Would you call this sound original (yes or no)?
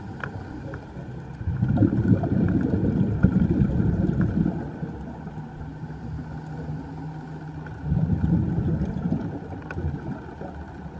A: yes